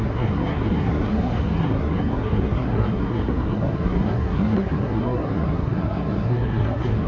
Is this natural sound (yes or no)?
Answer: no